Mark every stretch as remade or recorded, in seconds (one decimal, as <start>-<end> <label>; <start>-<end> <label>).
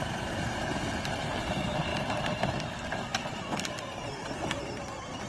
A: 0.0-1.9 recorded; 1.9-2.5 remade; 2.5-3.1 recorded; 3.1-4.2 remade; 4.2-5.3 recorded